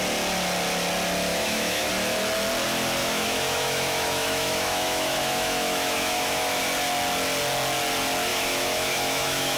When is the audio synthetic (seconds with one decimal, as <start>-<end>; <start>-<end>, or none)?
1.3-1.9; 3.0-6.6; 8.3-9.6